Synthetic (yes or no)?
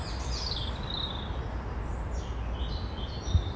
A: no